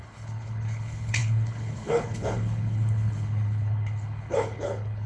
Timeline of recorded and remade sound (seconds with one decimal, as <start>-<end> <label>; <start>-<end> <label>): 0.0-5.1 remade